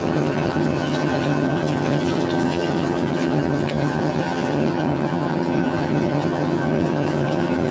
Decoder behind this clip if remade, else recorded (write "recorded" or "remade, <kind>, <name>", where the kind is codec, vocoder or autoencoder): remade, vocoder, HiFi-GAN